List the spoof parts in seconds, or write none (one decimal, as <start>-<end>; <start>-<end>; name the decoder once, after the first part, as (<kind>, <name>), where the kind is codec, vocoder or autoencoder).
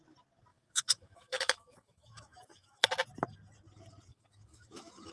0.5-2.9 (autoencoder, DAC-VAE); 4.1-5.1